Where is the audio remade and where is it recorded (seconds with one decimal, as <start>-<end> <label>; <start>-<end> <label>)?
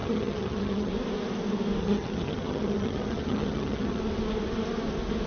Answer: 0.0-0.9 remade; 0.9-1.8 recorded; 1.8-4.0 remade; 4.0-5.3 recorded